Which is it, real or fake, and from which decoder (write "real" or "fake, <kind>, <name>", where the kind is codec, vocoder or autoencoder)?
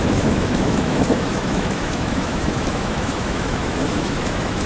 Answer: fake, autoencoder, DAC-VAE